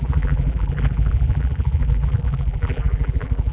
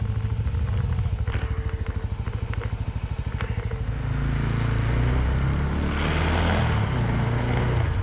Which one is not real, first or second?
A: first